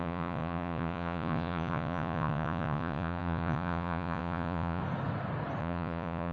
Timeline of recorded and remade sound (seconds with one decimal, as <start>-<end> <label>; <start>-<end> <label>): 0.0-4.8 remade; 4.8-5.6 recorded; 5.6-6.3 remade